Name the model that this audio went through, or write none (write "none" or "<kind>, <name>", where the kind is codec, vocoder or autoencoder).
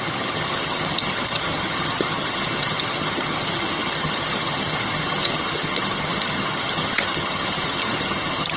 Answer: vocoder, HiFi-GAN